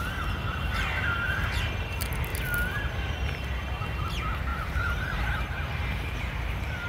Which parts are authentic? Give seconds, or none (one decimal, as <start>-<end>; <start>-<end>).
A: 0.0-4.5; 6.2-6.9